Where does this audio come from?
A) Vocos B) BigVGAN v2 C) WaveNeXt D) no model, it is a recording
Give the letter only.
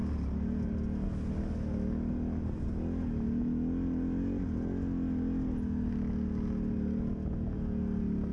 D